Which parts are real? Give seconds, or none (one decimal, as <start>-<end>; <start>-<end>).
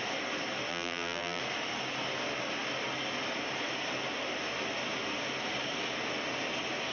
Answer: 0.0-0.7; 1.4-6.9